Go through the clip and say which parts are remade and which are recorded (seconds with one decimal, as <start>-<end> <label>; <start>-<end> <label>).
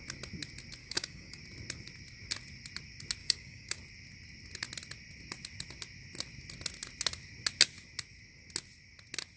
0.0-0.8 recorded; 0.8-1.4 remade; 1.4-3.2 recorded; 3.2-3.8 remade; 3.8-9.4 recorded